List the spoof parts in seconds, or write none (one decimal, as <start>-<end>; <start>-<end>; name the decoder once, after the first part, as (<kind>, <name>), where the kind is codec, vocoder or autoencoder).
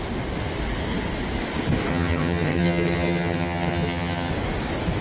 1.9-4.3 (vocoder, HiFi-GAN)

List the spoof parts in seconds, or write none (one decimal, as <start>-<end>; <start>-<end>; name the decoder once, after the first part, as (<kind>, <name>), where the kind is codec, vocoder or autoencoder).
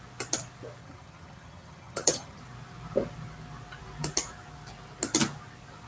0.8-2.4 (vocoder, HiFi-GAN)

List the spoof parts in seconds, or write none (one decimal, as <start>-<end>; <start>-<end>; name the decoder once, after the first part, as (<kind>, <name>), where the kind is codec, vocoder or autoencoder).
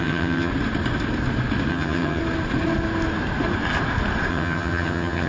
0.0-0.5 (vocoder, HiFi-GAN); 1.7-2.2; 4.3-5.3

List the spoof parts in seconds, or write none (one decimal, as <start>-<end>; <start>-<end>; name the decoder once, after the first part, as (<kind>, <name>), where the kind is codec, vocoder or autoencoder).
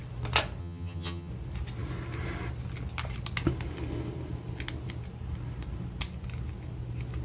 0.6-1.3 (vocoder, HiFi-GAN)